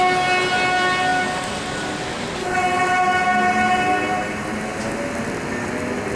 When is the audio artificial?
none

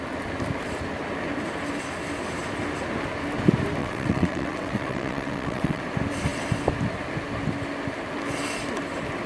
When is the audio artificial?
3.8-5.8 (vocoder, WaveNeXt)

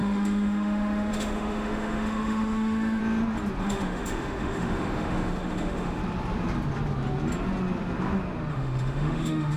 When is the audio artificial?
0.0-3.0 (autoencoder, DAC-VAE); 3.6-6.0; 8.5-9.6

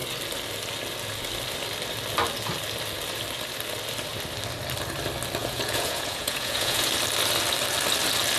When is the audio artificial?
5.4-6.9 (vocoder, Vocos)

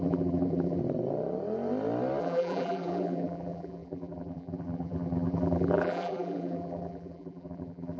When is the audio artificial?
0.0-0.8 (vocoder, BigVGAN v2); 2.2-8.0

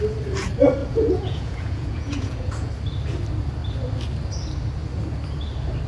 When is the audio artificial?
0.8-2.7 (vocoder, Vocos)